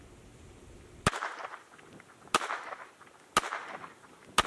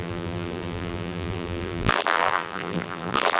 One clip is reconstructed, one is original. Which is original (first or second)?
first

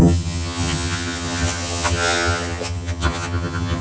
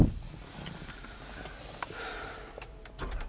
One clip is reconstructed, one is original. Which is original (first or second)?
second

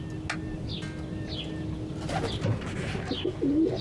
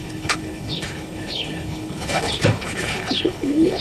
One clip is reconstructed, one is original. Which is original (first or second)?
first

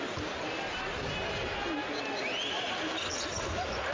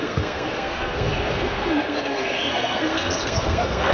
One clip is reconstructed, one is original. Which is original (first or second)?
first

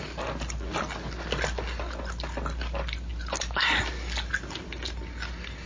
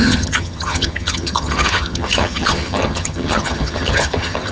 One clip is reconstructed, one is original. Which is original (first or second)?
first